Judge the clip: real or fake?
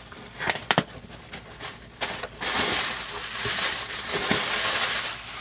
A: real